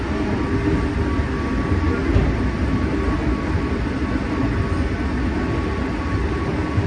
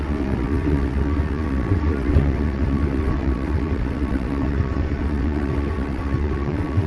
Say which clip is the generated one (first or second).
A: second